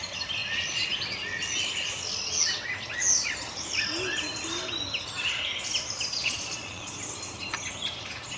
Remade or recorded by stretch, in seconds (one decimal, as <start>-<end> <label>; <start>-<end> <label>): 0.0-6.2 recorded; 6.2-6.9 remade; 6.9-8.4 recorded